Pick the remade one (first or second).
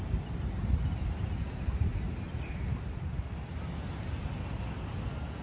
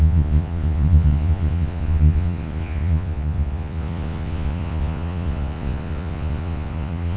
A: second